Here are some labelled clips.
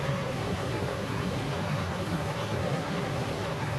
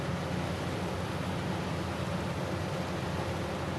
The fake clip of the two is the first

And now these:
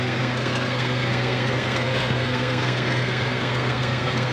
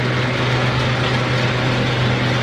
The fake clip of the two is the first